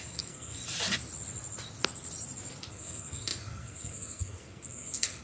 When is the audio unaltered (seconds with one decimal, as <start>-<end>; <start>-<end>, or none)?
0.6-2.7